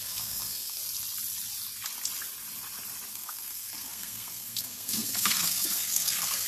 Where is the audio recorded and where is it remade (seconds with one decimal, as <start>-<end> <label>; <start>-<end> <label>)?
0.0-0.8 remade; 0.8-3.1 recorded; 3.1-6.5 remade